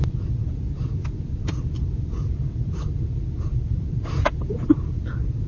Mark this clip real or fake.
fake